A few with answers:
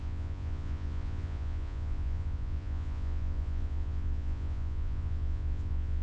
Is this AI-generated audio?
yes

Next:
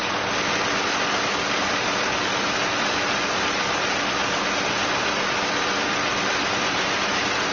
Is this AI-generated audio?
no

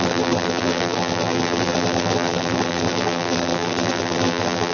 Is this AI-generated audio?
yes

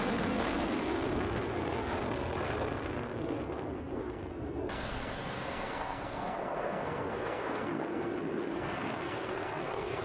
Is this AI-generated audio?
yes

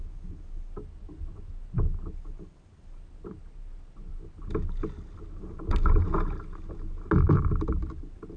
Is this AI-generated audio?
no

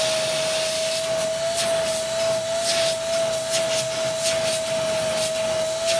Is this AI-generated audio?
no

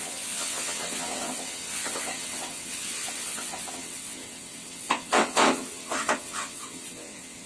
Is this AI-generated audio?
yes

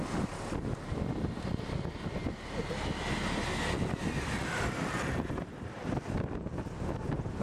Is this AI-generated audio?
no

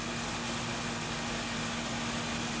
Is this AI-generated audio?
no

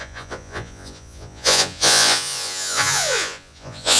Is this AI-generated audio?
yes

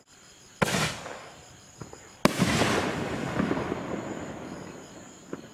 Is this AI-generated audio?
no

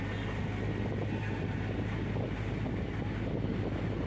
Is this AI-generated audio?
no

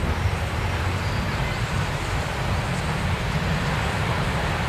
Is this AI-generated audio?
no